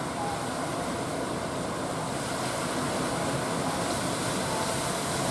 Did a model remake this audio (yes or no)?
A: no